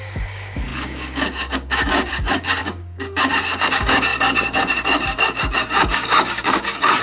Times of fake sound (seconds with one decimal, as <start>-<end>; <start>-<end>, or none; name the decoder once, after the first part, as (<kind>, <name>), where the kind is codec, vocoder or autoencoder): 0.0-7.0 (codec, DAC)